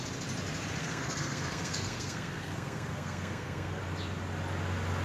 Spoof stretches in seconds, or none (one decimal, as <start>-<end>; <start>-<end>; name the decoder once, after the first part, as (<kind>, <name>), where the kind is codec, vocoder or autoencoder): 0.8-3.8 (codec, SNAC)